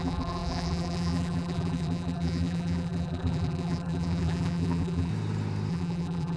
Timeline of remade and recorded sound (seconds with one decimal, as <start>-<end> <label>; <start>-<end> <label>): 0.0-5.1 remade; 5.1-5.7 recorded; 5.7-6.4 remade